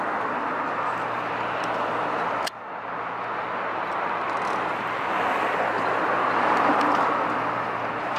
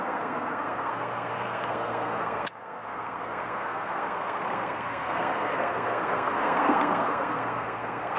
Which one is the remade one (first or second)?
second